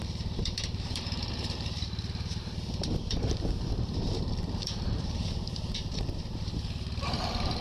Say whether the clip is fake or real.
fake